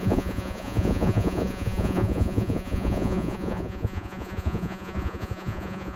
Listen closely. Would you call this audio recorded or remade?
remade